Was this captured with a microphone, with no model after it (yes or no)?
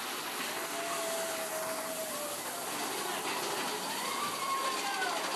yes